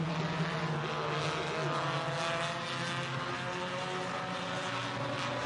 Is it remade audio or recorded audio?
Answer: recorded